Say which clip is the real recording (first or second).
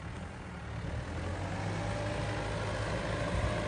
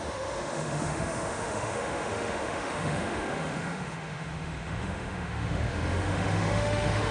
first